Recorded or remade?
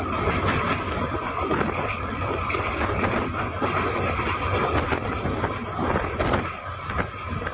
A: recorded